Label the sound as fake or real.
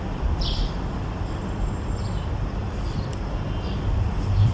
fake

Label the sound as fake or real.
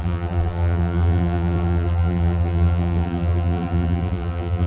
fake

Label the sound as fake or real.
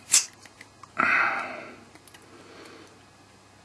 real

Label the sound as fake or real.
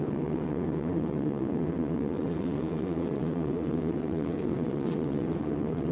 fake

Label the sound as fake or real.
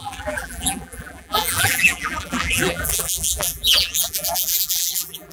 fake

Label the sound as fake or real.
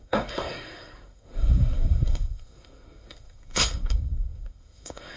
fake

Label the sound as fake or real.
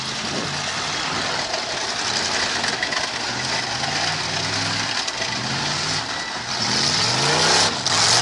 real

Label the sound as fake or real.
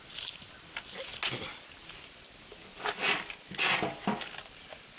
real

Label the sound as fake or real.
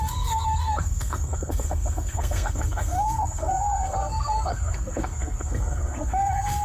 fake